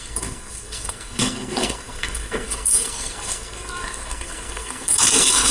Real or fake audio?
fake